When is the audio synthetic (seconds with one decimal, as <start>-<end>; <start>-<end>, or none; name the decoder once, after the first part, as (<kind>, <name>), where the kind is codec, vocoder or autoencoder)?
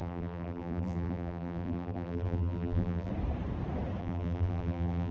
0.0-3.1 (vocoder, BigVGAN v2); 4.0-5.1